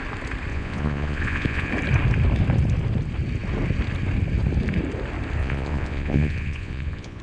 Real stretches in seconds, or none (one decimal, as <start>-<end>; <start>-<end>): 0.0-0.5; 1.7-5.4